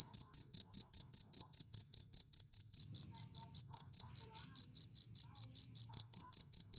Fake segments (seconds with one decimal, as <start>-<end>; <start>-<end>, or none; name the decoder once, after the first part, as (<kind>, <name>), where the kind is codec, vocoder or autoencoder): 0.0-2.8 (codec, SNAC); 3.6-4.1; 5.9-6.8